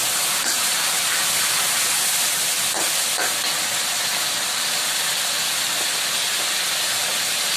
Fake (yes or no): no